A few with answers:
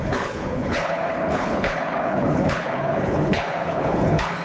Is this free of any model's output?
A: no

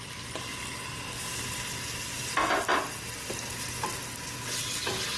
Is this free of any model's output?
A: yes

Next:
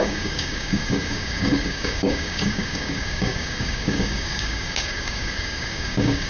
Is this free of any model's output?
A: no